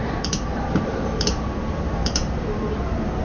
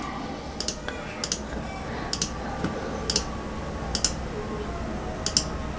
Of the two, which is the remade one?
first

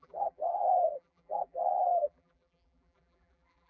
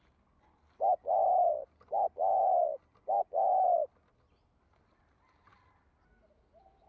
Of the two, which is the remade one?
first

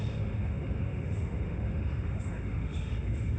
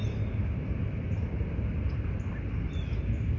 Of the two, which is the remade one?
first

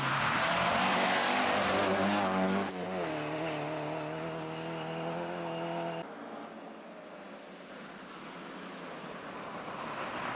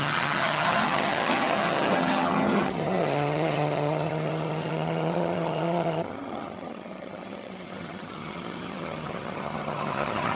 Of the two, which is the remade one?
second